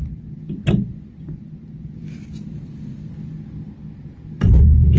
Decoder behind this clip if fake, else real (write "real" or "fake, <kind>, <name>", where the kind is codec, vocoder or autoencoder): real